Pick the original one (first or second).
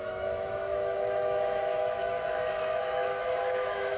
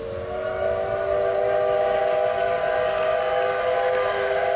second